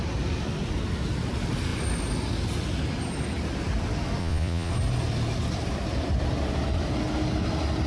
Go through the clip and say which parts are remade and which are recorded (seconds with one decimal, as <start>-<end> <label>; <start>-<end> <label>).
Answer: 0.0-4.2 recorded; 4.2-4.7 remade; 4.7-7.9 recorded